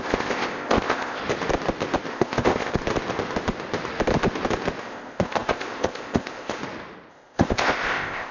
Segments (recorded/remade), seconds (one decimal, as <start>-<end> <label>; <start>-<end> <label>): 0.0-1.2 remade; 1.2-2.1 recorded; 2.1-2.8 remade; 2.8-4.8 recorded; 4.8-6.6 remade; 6.6-7.1 recorded; 7.1-8.3 remade

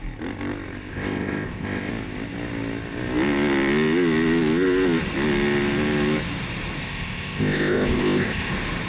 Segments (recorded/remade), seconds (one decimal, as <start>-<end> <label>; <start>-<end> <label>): 0.0-0.9 recorded; 0.9-1.9 remade; 1.9-6.8 recorded; 6.8-8.5 remade; 8.5-8.9 recorded

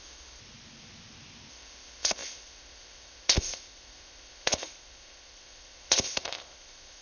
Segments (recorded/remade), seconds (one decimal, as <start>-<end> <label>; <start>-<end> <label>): 0.0-0.4 remade; 0.4-1.5 recorded; 1.5-7.0 remade

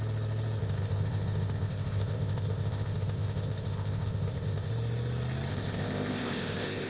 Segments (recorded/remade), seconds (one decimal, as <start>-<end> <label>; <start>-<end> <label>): 0.0-0.6 recorded; 0.6-4.7 remade; 4.7-5.5 recorded; 5.5-6.9 remade

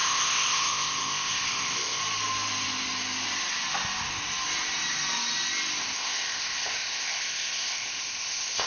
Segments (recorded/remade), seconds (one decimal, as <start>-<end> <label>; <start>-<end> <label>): 0.0-2.0 remade; 2.0-5.8 recorded; 5.8-8.7 remade

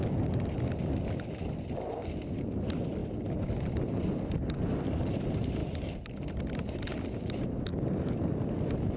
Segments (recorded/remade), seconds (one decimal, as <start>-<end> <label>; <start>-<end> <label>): 0.0-9.0 recorded

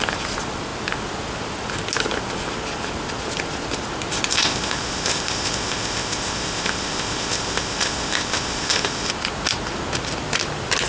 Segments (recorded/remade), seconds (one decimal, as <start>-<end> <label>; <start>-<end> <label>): 0.0-4.3 recorded; 4.3-9.1 remade; 9.1-10.9 recorded